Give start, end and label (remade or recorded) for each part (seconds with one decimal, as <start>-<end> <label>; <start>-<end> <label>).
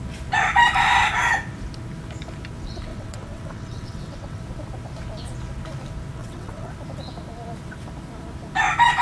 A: 0.0-2.9 recorded; 2.9-4.4 remade; 4.4-6.2 recorded; 6.2-6.7 remade; 6.7-9.0 recorded